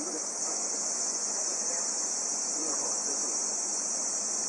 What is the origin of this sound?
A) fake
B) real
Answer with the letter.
A